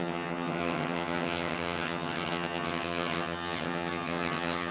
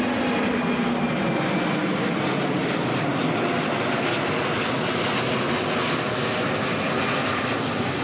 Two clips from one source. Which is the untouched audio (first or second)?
second